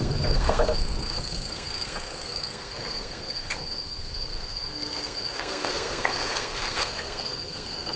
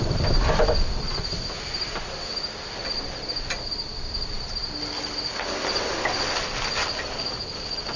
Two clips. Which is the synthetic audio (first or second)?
first